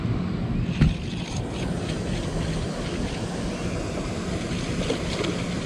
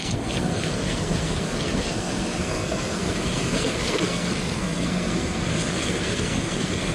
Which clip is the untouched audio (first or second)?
first